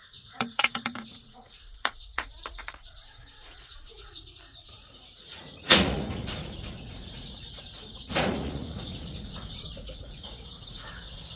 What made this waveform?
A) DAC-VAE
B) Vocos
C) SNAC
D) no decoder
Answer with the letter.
B